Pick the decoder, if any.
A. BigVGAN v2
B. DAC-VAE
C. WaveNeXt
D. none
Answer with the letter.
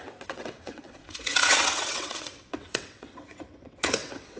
C